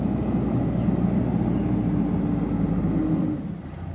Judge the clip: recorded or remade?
recorded